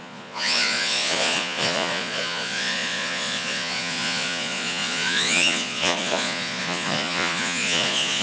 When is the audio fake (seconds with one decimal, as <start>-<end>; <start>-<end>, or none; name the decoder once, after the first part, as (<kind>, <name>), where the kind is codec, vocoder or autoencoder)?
0.0-8.2 (vocoder, Vocos)